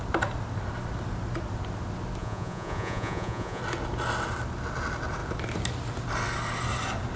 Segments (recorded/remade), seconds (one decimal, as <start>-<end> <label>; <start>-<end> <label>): 0.0-2.2 recorded; 2.2-3.6 remade; 3.6-7.2 recorded

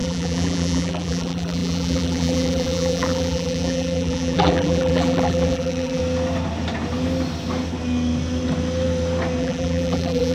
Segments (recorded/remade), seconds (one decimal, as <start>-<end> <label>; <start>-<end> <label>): 0.0-6.0 remade; 6.0-9.4 recorded; 9.4-10.3 remade

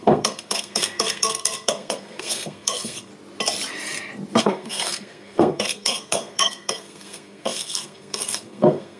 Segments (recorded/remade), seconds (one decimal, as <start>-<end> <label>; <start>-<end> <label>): 0.0-3.1 remade; 3.1-4.4 recorded; 4.4-9.0 remade

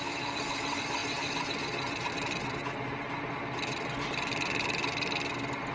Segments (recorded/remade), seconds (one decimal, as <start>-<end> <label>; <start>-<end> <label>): 0.0-1.0 remade; 1.0-2.1 recorded; 2.1-2.6 remade; 2.6-3.8 recorded; 3.8-5.7 remade

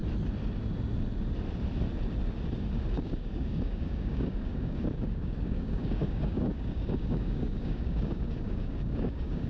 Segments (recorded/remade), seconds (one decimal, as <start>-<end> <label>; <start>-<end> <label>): 0.0-2.9 recorded; 2.9-9.5 remade

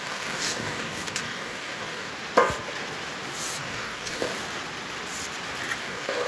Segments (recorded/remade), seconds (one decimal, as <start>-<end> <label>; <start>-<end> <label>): 0.0-2.1 remade; 2.1-3.6 recorded; 3.6-4.3 remade; 4.3-5.8 recorded; 5.8-6.3 remade

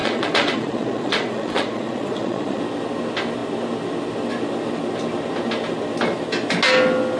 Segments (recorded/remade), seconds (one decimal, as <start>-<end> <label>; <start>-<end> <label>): 0.0-2.6 remade; 2.6-7.2 recorded

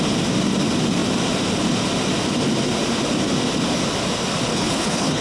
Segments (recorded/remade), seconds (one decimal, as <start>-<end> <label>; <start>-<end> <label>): 0.0-4.5 recorded; 4.5-5.2 remade